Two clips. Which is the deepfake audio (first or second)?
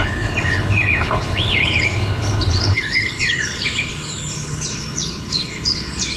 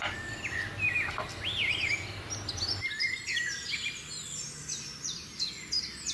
first